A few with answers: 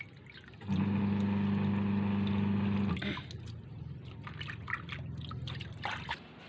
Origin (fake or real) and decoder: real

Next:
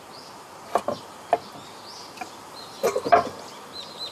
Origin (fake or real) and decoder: fake, vocoder, BigVGAN v2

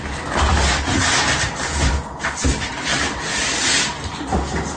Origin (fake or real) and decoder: real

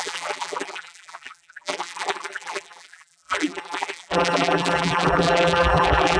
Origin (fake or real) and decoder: fake, vocoder, BigVGAN v2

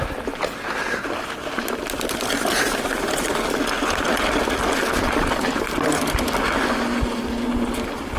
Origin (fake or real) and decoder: real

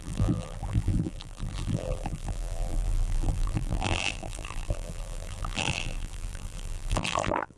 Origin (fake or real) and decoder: fake, vocoder, BigVGAN v2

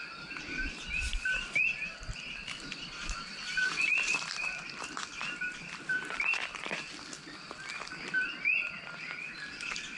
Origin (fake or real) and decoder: fake, vocoder, BigVGAN v2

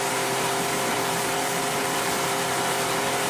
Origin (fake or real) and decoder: fake, vocoder, BigVGAN v2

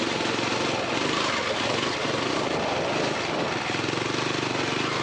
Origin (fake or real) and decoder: real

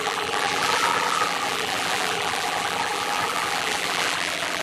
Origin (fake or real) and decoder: fake, vocoder, BigVGAN v2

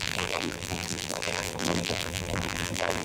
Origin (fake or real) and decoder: fake, vocoder, BigVGAN v2